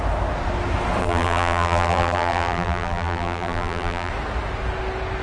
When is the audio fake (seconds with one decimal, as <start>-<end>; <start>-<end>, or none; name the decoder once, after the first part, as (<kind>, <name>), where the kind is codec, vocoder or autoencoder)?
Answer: 1.0-4.1 (vocoder, BigVGAN v2)